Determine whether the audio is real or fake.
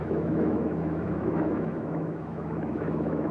fake